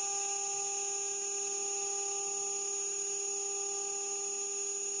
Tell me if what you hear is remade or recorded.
recorded